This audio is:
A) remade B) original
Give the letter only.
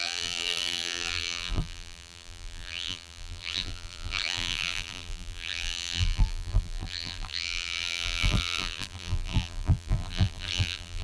A